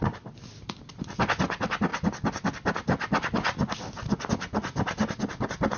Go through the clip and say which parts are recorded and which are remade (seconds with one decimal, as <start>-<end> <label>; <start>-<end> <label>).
0.0-5.8 recorded